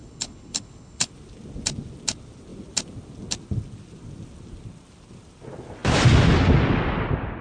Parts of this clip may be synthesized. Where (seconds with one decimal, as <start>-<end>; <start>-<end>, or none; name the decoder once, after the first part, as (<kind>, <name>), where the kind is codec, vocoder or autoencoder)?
0.0-1.1 (codec, HILCodec)